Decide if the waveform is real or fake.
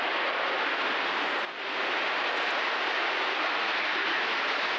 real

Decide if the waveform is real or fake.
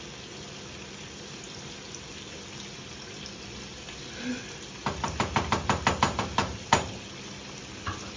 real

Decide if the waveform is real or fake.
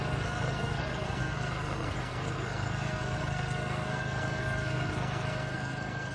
fake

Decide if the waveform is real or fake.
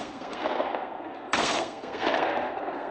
fake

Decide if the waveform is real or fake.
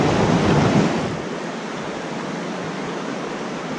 real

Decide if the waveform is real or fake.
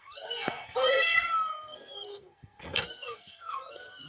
fake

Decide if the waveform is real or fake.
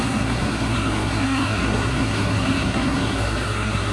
fake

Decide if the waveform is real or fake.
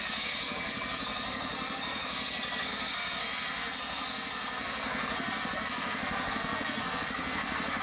fake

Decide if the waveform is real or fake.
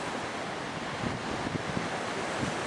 real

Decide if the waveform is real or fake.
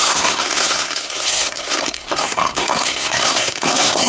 fake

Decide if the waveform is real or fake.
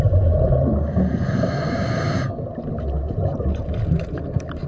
real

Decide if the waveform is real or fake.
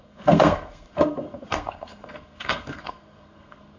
fake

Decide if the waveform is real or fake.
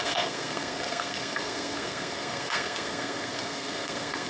fake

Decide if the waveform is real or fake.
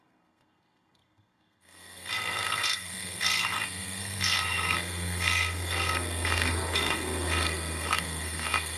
fake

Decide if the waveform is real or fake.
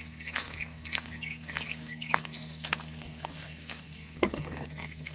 fake